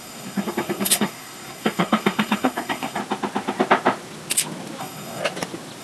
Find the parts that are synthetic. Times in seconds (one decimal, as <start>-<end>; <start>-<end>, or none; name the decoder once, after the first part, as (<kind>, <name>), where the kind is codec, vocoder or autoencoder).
0.0-3.0 (codec, SNAC); 4.8-5.2